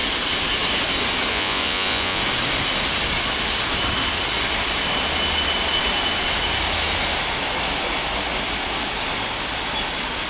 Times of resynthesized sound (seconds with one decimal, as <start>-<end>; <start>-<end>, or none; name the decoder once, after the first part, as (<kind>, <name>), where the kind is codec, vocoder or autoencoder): 1.3-2.2 (vocoder, Vocos)